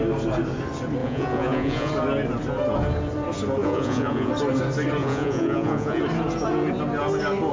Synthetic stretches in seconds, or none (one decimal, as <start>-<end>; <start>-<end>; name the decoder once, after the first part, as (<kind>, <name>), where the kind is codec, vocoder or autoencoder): 1.0-1.9 (vocoder, Vocos); 3.6-4.3; 5.0-6.0